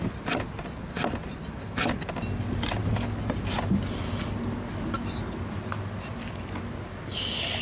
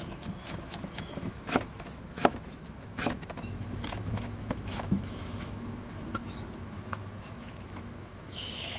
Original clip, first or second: first